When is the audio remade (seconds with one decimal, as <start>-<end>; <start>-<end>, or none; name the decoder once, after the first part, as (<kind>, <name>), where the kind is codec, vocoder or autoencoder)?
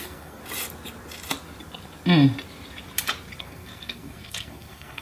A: 0.0-0.4 (codec, SNAC); 3.4-5.0